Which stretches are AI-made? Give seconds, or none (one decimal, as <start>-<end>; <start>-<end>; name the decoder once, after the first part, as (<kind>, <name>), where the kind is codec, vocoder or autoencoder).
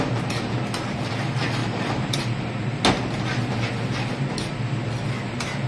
1.6-2.5 (vocoder, BigVGAN v2)